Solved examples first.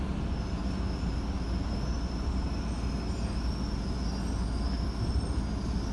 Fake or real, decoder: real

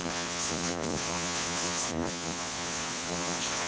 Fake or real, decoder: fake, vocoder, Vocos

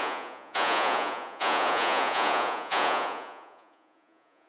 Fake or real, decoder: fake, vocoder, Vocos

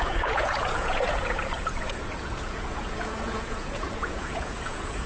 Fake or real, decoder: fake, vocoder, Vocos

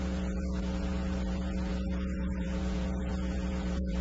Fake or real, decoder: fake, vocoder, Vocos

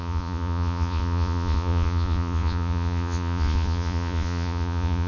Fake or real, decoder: fake, vocoder, Vocos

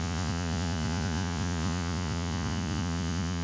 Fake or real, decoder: fake, vocoder, Vocos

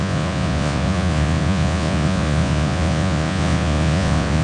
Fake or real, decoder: fake, vocoder, Vocos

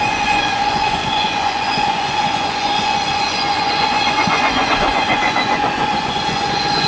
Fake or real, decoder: fake, vocoder, Vocos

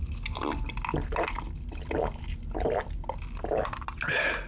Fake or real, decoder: real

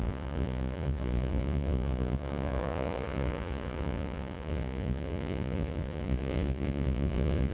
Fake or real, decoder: fake, vocoder, Vocos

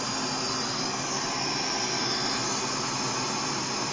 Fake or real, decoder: real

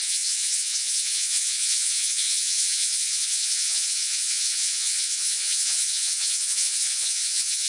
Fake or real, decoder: fake, vocoder, Vocos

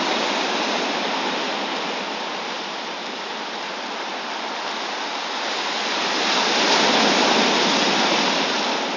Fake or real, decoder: real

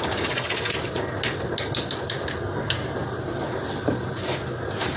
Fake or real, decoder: real